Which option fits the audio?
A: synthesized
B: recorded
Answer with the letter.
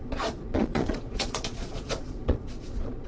A